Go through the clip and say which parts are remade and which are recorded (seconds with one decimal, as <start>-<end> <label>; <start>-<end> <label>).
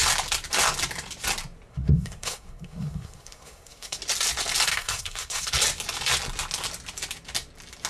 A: 0.0-1.7 recorded; 1.7-4.0 remade; 4.0-4.7 recorded; 4.7-5.5 remade; 5.5-7.9 recorded